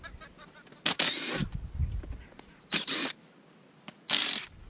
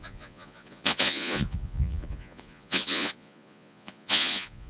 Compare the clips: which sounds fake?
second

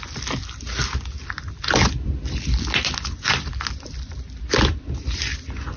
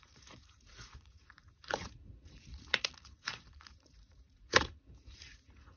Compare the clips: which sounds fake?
second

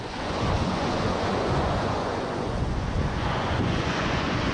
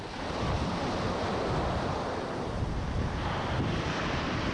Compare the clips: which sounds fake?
first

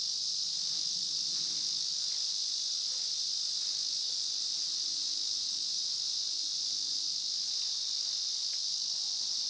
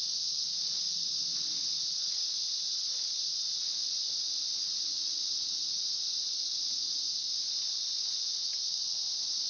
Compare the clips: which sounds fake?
second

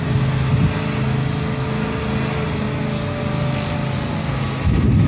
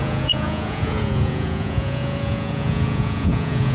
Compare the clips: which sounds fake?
second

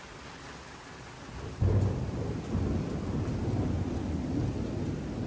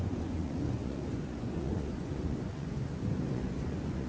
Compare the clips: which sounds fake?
second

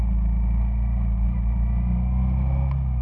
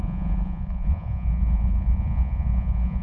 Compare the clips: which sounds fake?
second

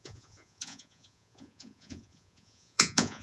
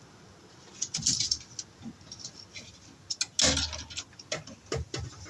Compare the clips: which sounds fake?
first